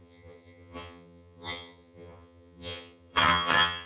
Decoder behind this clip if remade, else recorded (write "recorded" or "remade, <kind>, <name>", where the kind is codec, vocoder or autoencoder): remade, vocoder, HiFi-GAN